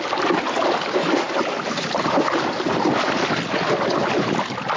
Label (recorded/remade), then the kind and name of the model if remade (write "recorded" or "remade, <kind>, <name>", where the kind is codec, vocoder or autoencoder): recorded